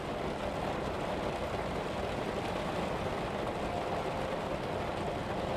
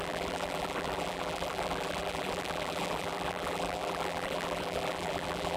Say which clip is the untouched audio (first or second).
first